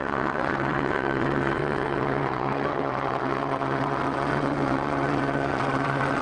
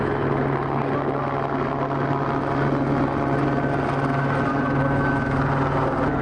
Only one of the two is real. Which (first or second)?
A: second